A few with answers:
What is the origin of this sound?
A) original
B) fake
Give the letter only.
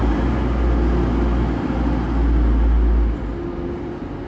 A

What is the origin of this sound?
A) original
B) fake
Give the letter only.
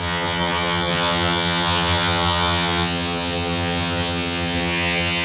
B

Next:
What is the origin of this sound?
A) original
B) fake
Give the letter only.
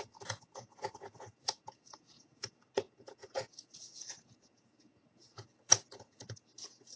B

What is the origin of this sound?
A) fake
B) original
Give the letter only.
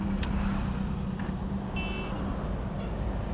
B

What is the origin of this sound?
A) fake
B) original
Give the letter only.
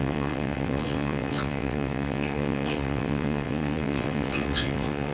A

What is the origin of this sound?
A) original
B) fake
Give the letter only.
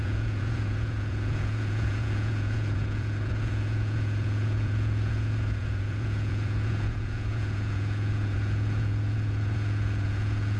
B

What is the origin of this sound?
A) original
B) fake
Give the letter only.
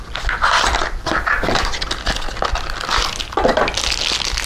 A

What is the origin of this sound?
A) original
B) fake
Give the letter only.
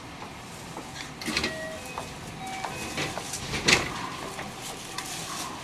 A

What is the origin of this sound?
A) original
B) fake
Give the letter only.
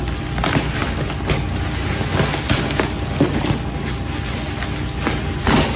A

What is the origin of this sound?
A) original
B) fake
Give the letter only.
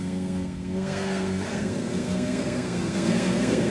B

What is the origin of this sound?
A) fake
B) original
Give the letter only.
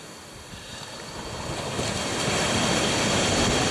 B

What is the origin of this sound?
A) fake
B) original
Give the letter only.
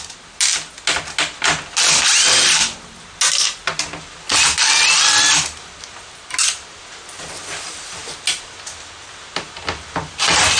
B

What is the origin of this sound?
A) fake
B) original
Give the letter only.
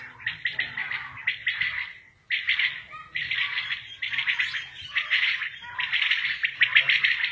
B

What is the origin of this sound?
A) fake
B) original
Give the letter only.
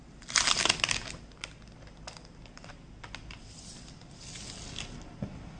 B